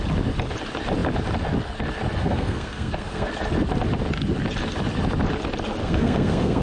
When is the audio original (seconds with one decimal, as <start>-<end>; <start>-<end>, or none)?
0.0-2.2; 3.3-5.8